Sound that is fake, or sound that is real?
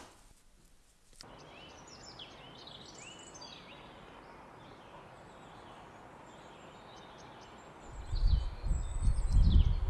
real